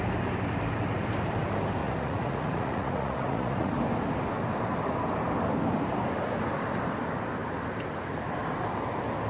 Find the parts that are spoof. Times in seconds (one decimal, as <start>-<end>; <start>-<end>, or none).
1.8-3.7